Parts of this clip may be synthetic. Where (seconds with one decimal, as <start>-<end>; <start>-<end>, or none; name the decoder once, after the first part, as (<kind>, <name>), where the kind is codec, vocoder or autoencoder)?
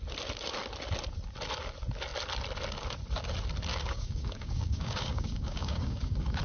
3.7-6.4 (codec, DAC)